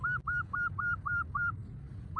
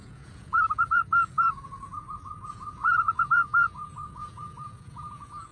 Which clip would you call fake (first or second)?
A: second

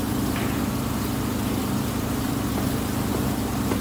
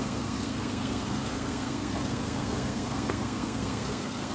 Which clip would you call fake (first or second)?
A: second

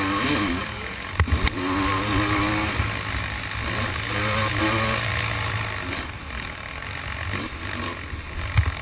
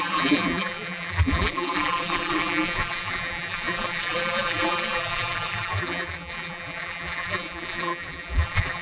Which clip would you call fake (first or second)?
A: second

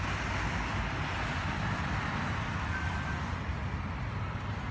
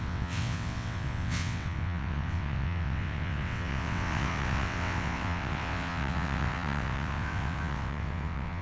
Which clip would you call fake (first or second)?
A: second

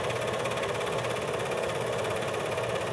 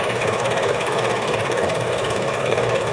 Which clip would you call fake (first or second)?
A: second